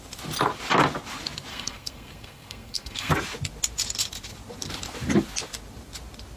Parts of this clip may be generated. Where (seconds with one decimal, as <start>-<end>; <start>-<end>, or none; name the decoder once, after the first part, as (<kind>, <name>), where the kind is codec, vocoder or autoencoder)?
1.5-3.1 (codec, SNAC)